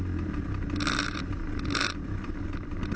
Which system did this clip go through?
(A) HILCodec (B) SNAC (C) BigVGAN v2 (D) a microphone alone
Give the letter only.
C